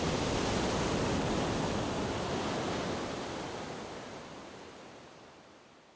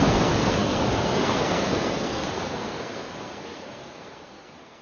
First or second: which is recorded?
first